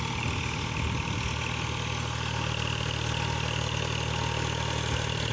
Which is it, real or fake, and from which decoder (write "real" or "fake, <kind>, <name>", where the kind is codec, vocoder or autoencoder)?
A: real